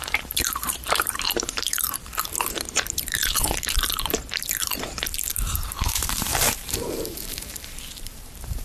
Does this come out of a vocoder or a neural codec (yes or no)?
yes